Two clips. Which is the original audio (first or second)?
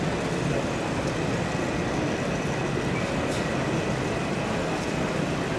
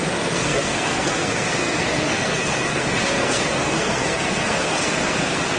first